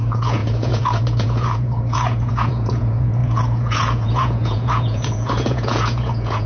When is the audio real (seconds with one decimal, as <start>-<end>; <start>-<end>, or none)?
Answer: none